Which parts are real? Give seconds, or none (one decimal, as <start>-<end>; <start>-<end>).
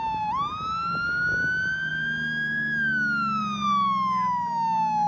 0.0-5.1